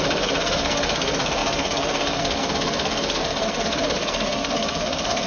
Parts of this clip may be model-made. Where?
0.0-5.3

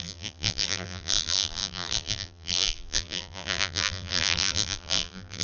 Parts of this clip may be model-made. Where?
0.0-5.4

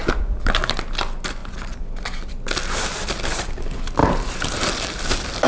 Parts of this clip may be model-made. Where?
4.0-5.0

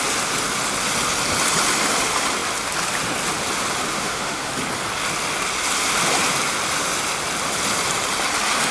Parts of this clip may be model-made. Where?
3.9-4.5

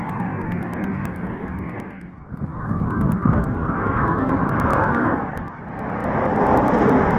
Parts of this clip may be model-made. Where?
0.0-4.3; 4.7-5.6

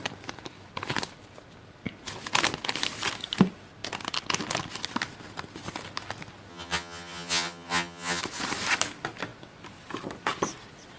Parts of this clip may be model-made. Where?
6.5-8.2

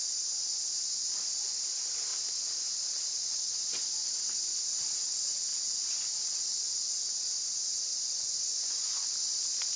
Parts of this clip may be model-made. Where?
7.9-9.1